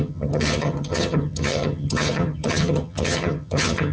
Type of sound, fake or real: fake